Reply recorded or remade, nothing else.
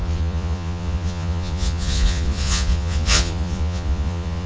remade